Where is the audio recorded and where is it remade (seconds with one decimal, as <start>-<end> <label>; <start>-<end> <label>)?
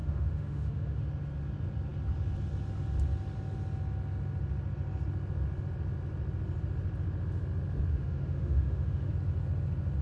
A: 0.0-1.0 remade; 1.0-7.9 recorded; 7.9-9.1 remade; 9.1-10.0 recorded